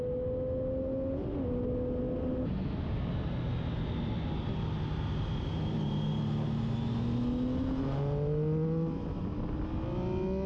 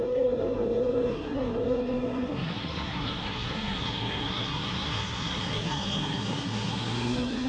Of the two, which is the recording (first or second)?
first